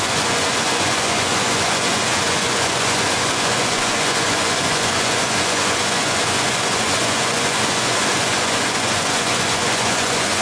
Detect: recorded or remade remade